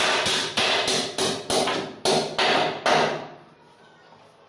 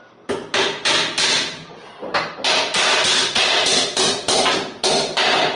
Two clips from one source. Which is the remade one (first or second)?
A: second